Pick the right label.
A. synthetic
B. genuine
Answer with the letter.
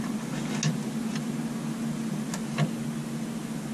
B